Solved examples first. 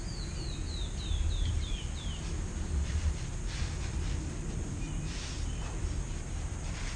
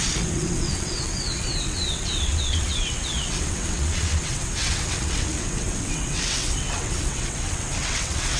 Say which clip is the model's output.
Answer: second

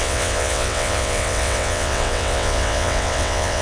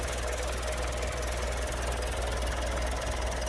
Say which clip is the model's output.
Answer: first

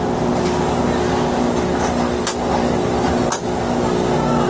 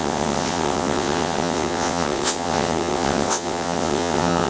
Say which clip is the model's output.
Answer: second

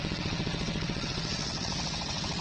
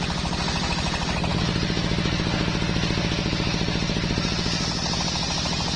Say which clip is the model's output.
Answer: first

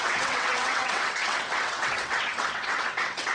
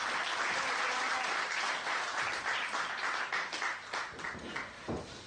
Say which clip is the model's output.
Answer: first